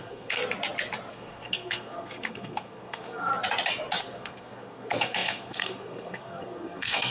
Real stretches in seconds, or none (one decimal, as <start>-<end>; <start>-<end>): 0.4-1.1; 3.3-4.0